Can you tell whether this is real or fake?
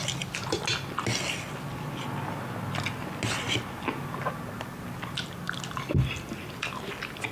real